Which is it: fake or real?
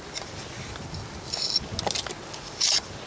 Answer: real